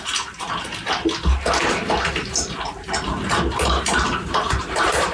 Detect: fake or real real